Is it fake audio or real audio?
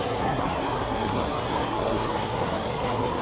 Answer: fake